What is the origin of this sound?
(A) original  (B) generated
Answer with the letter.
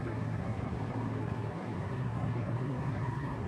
B